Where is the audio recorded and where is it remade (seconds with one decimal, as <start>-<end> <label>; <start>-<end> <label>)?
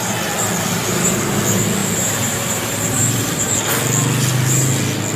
0.0-0.8 recorded; 0.8-1.4 remade; 1.4-1.8 recorded; 1.8-3.6 remade; 3.6-5.2 recorded